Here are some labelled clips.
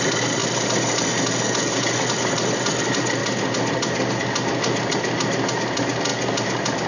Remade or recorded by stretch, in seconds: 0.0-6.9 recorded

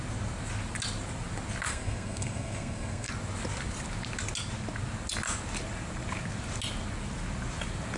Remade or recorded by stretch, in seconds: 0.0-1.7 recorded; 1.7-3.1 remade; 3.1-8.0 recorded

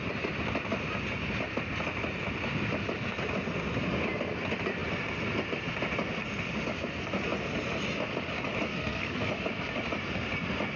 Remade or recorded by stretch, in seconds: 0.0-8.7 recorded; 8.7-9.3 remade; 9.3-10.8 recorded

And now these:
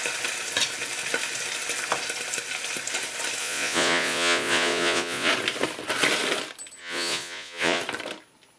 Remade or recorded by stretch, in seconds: 0.0-3.4 recorded; 3.4-5.3 remade; 5.3-6.8 recorded; 6.8-7.8 remade; 7.8-8.6 recorded

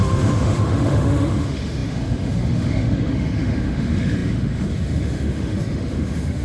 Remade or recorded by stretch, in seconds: 0.0-6.4 remade

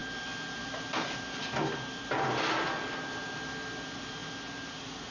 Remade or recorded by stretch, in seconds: 0.0-5.1 recorded